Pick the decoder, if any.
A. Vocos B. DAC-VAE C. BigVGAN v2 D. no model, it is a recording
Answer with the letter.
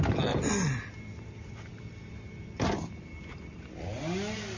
D